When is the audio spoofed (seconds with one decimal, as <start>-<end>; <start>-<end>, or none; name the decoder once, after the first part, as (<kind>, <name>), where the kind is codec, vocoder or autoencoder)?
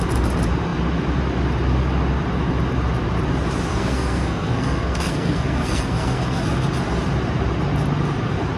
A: 3.7-6.4 (codec, SNAC)